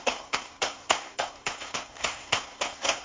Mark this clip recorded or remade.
remade